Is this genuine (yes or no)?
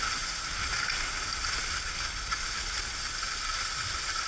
yes